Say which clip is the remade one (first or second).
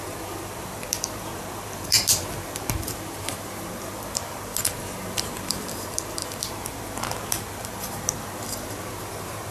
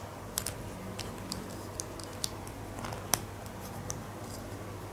first